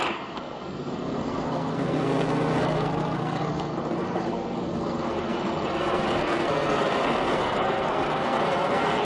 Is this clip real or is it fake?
fake